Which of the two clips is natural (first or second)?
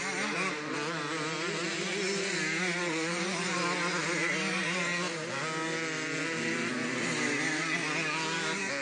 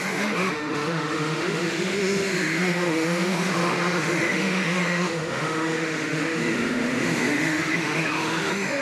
first